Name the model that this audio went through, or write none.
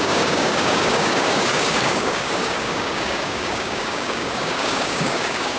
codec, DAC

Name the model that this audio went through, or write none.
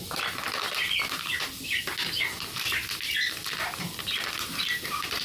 none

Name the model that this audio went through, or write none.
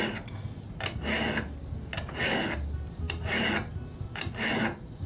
none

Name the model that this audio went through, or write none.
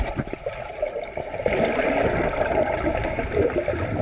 none